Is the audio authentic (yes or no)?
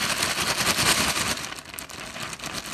yes